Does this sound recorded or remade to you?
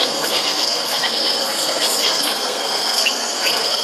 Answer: remade